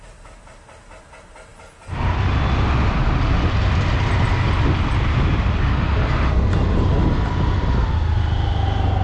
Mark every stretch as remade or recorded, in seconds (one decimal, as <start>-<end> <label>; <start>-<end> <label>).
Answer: 0.0-9.0 recorded